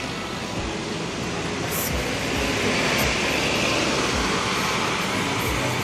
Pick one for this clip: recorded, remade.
recorded